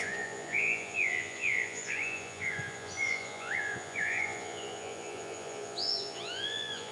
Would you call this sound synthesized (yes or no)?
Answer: yes